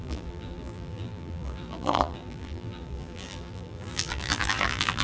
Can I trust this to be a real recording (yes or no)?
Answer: no